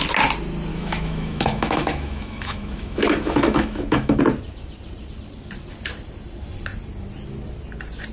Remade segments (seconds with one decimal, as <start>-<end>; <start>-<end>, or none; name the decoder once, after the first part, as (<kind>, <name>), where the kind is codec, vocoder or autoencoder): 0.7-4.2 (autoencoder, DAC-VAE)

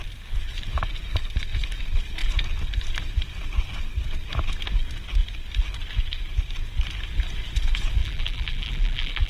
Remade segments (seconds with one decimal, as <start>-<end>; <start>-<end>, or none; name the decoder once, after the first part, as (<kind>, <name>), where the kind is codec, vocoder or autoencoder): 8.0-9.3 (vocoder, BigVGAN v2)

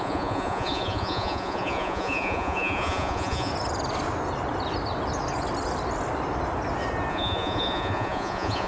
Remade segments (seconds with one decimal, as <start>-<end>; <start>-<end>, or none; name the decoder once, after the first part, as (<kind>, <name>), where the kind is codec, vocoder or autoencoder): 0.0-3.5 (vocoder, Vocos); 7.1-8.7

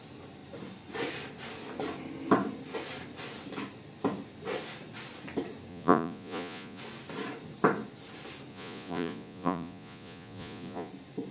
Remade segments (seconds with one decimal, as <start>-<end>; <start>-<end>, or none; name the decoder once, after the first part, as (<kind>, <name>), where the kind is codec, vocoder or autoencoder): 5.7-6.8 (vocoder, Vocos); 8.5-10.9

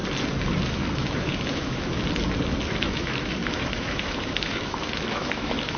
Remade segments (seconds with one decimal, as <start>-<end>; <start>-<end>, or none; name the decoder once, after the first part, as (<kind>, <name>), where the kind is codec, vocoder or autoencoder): 0.7-2.0 (autoencoder, DAC-VAE); 2.8-5.8

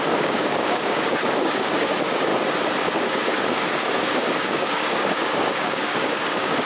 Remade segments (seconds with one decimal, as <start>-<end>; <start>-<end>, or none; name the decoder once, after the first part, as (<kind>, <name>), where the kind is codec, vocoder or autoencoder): 0.0-2.3 (codec, DAC); 3.0-6.7

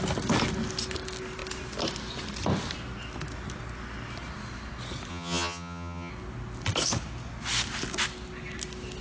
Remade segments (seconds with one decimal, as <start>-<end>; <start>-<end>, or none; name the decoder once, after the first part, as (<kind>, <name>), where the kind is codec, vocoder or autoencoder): 5.1-6.1 (vocoder, HiFi-GAN)

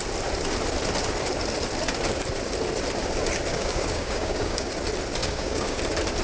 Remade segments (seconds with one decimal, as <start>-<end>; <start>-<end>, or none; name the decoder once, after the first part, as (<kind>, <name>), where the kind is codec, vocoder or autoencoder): 3.5-4.7 (codec, DAC); 5.2-5.8